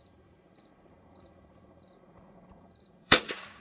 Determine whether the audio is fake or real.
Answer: fake